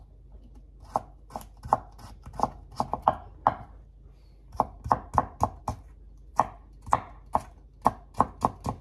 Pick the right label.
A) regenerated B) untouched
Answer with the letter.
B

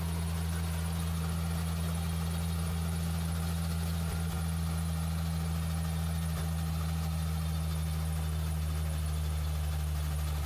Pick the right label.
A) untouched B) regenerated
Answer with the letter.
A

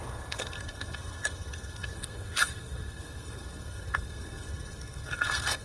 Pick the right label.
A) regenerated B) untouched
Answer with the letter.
A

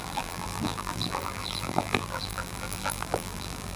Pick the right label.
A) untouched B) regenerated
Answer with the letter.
B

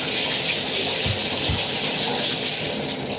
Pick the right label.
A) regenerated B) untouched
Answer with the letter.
B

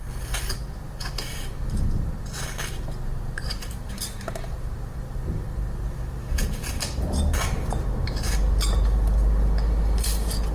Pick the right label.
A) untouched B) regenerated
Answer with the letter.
A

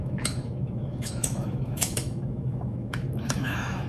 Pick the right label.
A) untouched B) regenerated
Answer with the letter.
B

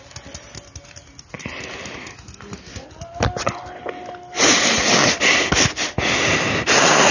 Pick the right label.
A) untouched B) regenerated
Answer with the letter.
A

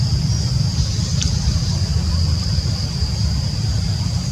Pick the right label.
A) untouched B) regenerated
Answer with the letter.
B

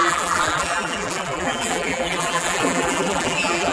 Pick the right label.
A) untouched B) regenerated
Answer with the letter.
B